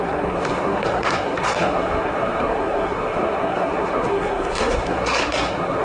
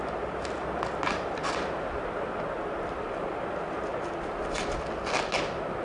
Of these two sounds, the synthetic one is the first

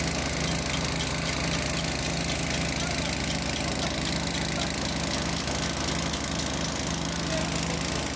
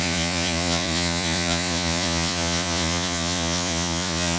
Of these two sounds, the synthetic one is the second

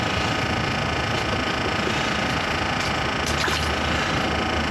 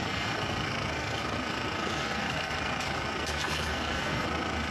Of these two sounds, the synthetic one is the second